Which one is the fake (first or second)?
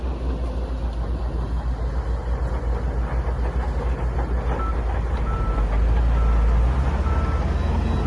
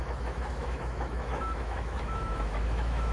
second